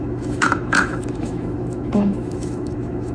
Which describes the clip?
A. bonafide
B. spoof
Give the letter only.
B